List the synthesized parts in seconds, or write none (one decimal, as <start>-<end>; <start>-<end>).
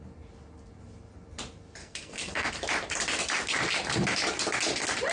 1.8-2.5